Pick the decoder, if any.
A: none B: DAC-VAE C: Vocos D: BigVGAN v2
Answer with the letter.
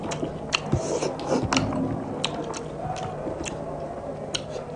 A